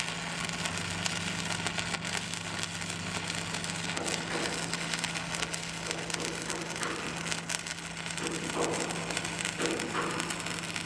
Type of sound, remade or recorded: recorded